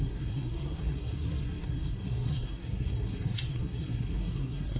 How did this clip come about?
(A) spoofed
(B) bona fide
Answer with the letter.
A